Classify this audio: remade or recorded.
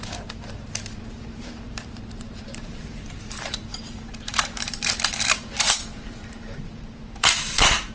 remade